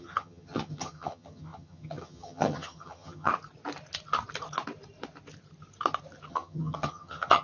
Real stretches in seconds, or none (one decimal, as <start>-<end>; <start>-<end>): 3.3-6.3